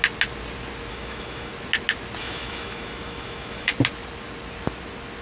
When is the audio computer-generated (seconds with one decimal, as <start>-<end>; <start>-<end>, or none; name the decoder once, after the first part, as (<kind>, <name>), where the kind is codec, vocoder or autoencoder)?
0.9-1.5 (autoencoder, DAC-VAE); 2.2-3.7